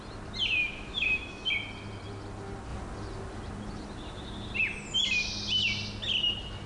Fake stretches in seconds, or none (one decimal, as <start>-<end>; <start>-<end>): 0.6-1.5